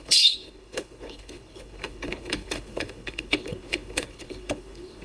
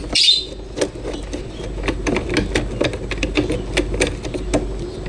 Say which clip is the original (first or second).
second